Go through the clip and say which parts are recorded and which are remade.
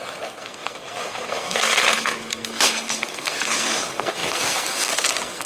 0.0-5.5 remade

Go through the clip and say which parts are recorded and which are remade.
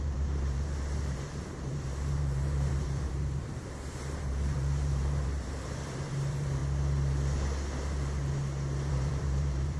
0.0-6.6 remade; 6.6-8.9 recorded; 8.9-9.8 remade